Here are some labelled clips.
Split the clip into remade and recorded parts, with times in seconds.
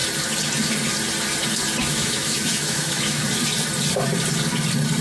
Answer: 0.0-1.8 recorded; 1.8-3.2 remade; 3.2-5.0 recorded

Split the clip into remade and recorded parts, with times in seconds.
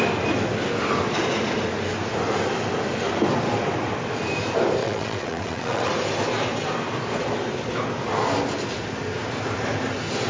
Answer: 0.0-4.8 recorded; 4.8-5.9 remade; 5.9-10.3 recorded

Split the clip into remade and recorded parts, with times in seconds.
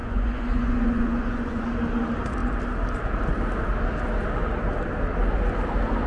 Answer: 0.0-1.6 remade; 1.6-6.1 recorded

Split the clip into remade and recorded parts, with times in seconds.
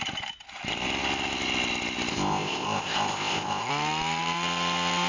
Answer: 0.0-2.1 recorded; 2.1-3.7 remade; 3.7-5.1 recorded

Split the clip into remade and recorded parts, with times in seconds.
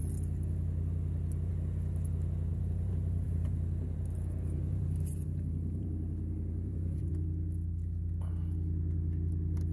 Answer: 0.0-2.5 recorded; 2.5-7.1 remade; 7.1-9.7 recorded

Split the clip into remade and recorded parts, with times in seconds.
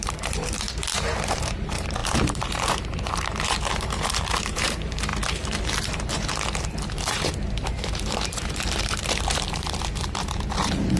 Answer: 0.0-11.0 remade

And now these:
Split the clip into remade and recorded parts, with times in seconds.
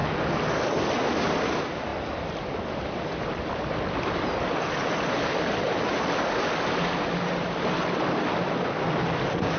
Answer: 0.0-9.6 recorded